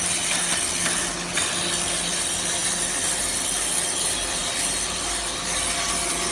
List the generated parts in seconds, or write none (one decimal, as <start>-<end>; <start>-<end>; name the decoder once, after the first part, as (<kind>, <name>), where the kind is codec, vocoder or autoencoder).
none